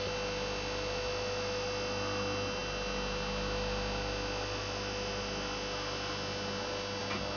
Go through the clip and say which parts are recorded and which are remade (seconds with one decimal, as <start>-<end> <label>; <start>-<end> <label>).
0.0-7.4 recorded